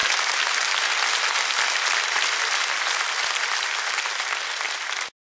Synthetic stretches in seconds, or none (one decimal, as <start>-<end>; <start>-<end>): none